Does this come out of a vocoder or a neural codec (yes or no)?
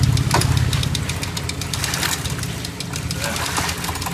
no